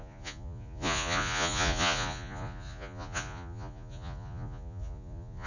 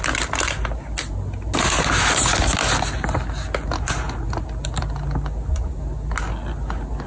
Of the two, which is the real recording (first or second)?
second